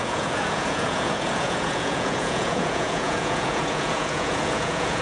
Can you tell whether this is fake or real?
fake